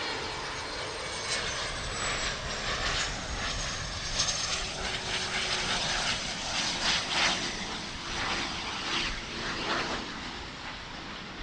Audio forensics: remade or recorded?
recorded